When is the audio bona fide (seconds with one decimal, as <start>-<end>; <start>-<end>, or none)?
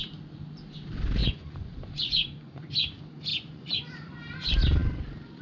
0.0-1.2; 2.7-3.3; 3.9-5.4